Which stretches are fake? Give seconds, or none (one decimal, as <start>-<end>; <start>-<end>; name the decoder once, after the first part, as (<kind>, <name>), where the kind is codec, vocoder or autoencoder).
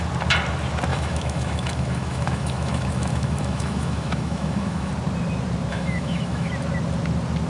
0.9-4.9 (autoencoder, DAC-VAE); 5.7-6.5